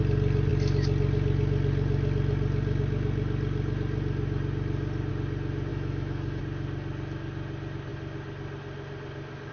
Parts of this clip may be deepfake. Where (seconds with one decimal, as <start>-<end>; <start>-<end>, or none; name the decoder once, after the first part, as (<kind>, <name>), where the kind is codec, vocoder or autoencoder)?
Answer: 5.7-6.4 (autoencoder, DAC-VAE)